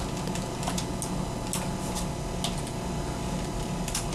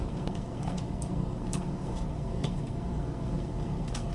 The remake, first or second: second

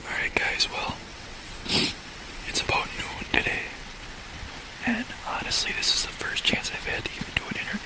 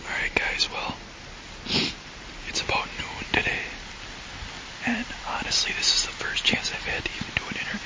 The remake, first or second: first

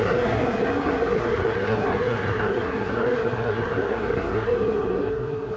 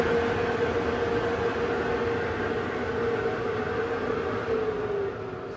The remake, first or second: first